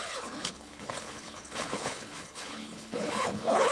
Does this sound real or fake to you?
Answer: fake